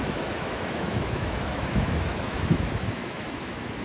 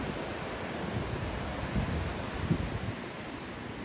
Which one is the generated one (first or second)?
first